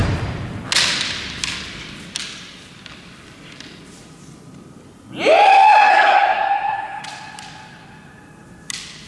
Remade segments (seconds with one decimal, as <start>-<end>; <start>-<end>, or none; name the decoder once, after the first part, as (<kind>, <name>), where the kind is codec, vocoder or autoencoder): 5.9-7.0 (codec, SNAC)